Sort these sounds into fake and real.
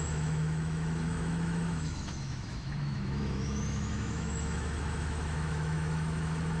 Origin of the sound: fake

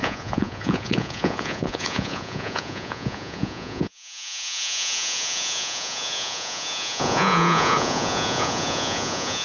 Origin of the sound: fake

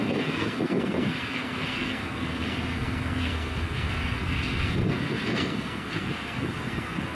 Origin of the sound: fake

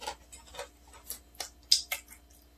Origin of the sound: real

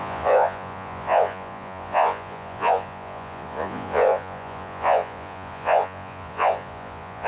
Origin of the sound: fake